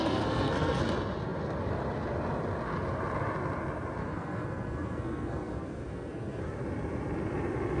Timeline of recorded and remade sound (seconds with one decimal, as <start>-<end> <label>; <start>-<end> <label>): 0.0-0.8 remade; 0.8-4.0 recorded; 4.0-6.4 remade; 6.4-7.8 recorded